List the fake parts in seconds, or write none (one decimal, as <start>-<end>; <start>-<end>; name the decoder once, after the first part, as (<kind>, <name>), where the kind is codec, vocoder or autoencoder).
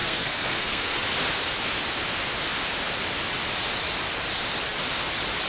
0.0-1.0 (codec, SNAC)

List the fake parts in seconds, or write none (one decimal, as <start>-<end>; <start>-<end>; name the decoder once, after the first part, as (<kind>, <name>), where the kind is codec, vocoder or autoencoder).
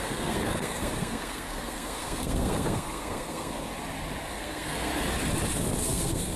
0.0-3.7 (codec, SNAC); 4.3-4.9; 5.8-6.4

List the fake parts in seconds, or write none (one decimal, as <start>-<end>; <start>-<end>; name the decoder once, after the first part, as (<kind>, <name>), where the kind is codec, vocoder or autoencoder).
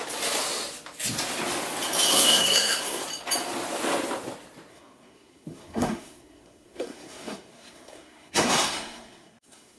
2.1-3.0 (codec, SNAC); 4.7-9.8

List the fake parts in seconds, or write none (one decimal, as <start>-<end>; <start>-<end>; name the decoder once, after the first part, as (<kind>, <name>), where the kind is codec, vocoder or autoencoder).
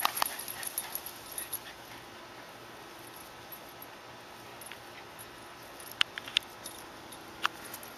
none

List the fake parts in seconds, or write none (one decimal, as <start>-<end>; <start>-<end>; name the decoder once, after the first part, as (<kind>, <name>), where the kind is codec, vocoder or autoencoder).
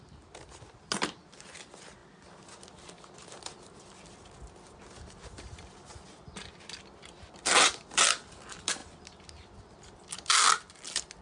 none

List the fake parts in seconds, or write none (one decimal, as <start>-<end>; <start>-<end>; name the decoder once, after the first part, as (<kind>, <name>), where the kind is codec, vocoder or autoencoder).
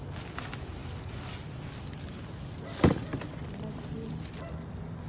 none